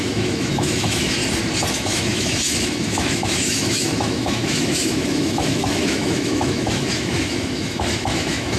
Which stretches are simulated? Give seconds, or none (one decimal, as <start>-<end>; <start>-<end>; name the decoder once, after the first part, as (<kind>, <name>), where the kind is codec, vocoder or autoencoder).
0.0-1.2 (autoencoder, DAC-VAE); 1.7-8.6